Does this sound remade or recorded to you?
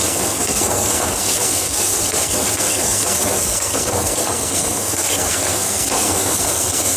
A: remade